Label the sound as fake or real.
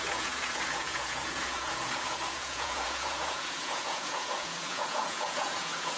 fake